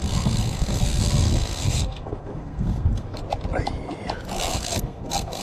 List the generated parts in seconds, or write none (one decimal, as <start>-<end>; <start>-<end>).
0.0-3.2; 4.5-5.4